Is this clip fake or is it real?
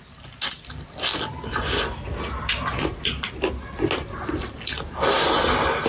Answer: real